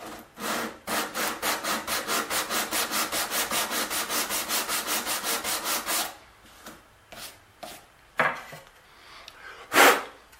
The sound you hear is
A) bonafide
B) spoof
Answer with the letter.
A